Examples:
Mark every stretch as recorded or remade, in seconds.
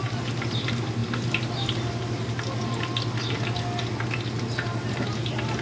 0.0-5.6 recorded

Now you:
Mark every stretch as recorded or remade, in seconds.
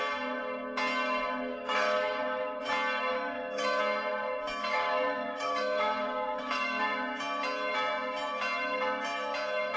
0.0-1.5 recorded; 1.5-2.6 remade; 2.6-3.1 recorded; 3.1-3.8 remade; 3.8-4.6 recorded; 4.6-6.8 remade; 6.8-9.8 recorded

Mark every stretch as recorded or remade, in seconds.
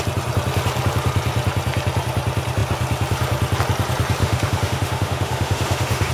0.0-4.2 recorded; 4.2-6.1 remade